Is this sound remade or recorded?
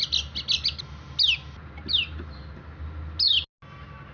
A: recorded